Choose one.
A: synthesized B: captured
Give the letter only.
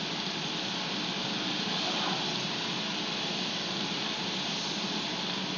B